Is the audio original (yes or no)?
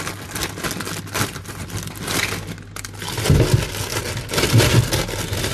yes